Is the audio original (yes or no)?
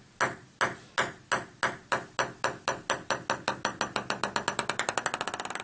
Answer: yes